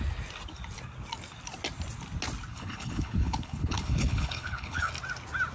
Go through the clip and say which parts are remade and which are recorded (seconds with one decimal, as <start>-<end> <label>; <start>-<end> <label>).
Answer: 0.0-2.5 recorded; 2.5-4.9 remade; 4.9-5.5 recorded